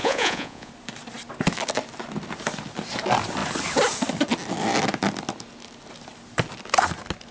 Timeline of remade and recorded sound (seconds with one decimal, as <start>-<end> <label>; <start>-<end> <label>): 0.0-0.7 remade; 0.7-7.3 recorded